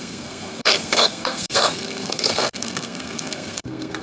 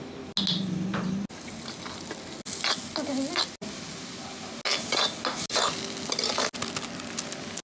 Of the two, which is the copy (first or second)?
first